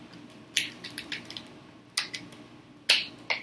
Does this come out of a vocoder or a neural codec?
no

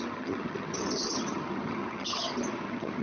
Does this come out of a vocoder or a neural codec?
yes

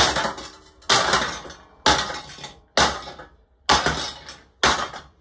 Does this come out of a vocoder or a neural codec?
no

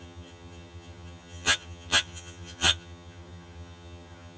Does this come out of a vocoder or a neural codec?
yes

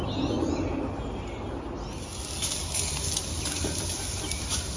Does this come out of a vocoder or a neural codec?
no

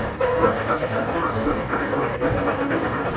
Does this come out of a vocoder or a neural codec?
yes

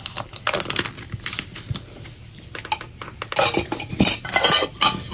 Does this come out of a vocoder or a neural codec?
no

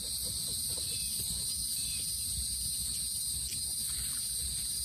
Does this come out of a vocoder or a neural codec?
no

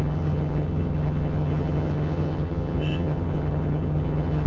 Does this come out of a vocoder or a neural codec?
yes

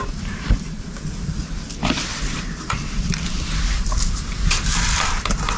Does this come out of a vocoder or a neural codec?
no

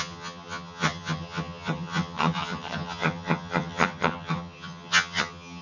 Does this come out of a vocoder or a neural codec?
yes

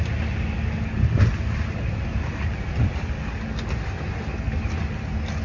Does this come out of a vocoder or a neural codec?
no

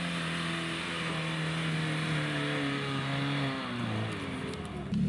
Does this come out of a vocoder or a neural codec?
no